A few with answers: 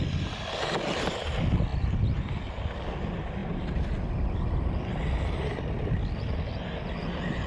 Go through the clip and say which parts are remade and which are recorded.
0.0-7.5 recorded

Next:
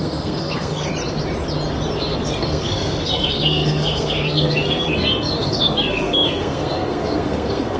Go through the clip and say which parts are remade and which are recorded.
0.0-0.9 remade; 0.9-2.0 recorded; 2.0-7.8 remade

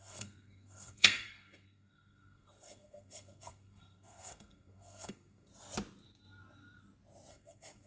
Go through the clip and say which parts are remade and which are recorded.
0.0-5.5 remade; 5.5-7.3 recorded; 7.3-7.9 remade

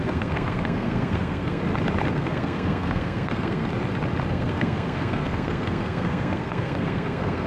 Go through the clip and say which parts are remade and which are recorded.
0.0-1.6 remade; 1.6-2.1 recorded; 2.1-3.7 remade; 3.7-4.3 recorded; 4.3-7.5 remade

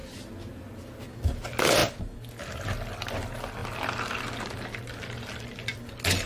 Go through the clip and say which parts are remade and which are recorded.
0.0-6.3 recorded

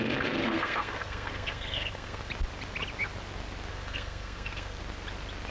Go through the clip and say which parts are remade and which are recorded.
0.0-0.4 recorded; 0.4-2.3 remade; 2.3-3.7 recorded; 3.7-4.8 remade; 4.8-5.5 recorded

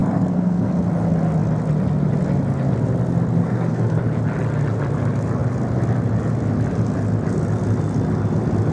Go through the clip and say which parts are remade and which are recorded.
0.0-0.7 remade; 0.7-3.4 recorded; 3.4-4.0 remade; 4.0-8.7 recorded